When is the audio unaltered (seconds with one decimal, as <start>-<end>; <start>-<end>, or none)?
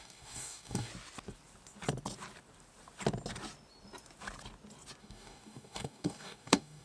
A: 0.9-5.0